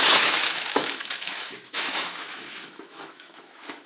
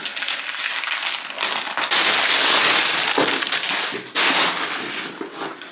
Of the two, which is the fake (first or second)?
first